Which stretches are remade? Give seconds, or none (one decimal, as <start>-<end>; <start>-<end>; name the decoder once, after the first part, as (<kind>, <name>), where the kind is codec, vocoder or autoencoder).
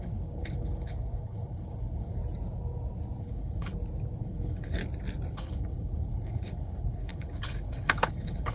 0.0-2.2 (codec, HILCodec); 3.2-3.7; 4.2-4.8; 5.3-8.5